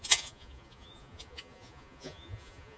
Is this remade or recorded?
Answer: remade